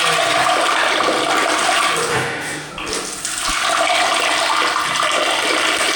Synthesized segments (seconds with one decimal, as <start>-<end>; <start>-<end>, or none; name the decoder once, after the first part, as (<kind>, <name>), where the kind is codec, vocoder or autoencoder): 2.1-2.7 (autoencoder, DAC-VAE)